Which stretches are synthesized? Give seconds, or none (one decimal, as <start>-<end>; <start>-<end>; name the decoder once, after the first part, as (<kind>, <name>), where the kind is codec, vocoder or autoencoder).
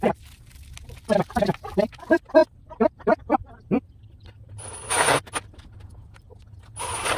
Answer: none